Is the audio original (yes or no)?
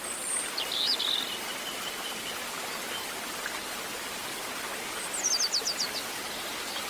no